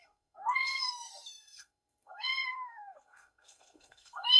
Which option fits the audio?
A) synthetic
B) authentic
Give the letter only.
A